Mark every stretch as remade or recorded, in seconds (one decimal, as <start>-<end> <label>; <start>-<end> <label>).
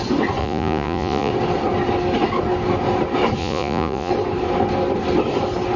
0.0-0.4 recorded; 0.4-1.3 remade; 1.3-3.4 recorded; 3.4-4.1 remade; 4.1-5.8 recorded